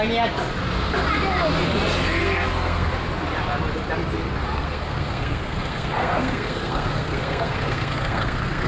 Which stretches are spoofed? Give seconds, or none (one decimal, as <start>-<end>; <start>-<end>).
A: 2.2-2.9; 4.4-8.7